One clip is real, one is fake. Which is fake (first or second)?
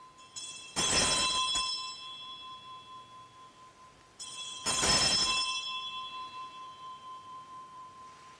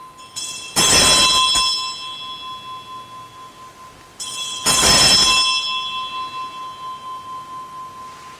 first